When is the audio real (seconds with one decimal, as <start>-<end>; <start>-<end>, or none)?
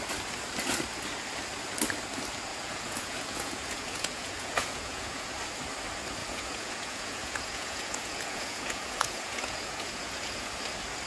0.0-2.5; 5.3-6.2; 10.6-11.1